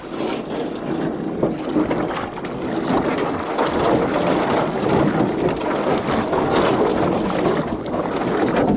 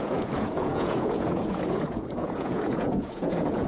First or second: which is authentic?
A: first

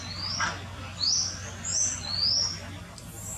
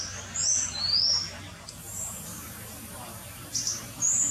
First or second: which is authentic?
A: first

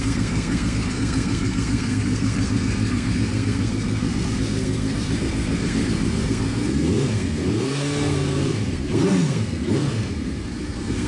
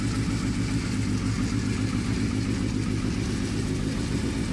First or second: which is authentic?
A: second